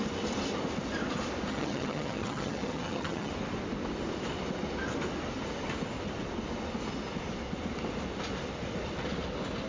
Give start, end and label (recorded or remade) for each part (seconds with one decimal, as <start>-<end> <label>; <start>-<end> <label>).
0.0-1.5 recorded; 1.5-3.3 remade; 3.3-9.7 recorded